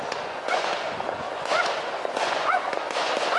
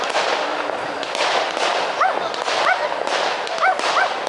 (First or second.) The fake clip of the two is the first